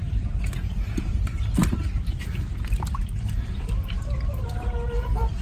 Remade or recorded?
remade